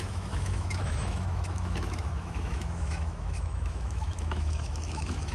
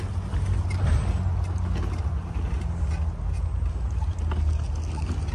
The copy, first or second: first